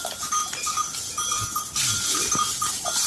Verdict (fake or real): real